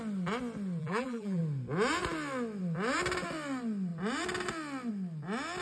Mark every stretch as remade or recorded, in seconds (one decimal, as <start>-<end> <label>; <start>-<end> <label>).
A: 0.0-0.8 recorded; 0.8-1.4 remade; 1.4-5.6 recorded